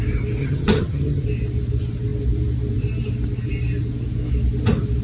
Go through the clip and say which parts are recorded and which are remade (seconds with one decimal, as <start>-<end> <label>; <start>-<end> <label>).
0.0-0.4 recorded; 0.4-1.2 remade; 1.2-5.0 recorded